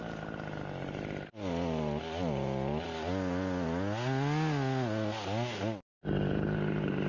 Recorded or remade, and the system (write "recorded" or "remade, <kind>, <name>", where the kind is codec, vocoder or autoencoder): recorded